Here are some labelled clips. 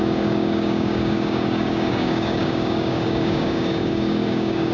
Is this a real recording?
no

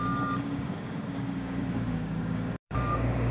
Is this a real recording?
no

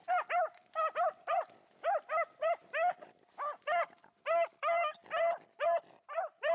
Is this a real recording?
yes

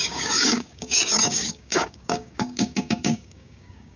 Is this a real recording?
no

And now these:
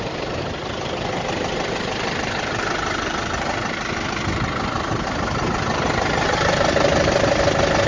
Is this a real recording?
yes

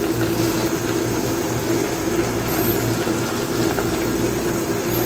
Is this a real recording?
yes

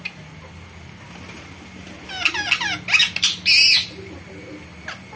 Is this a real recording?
yes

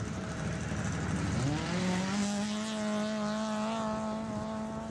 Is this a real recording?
yes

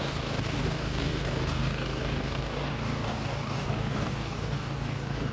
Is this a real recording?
no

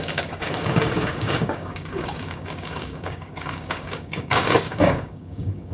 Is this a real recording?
no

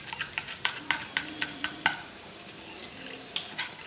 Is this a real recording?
yes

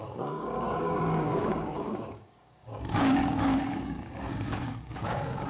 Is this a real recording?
no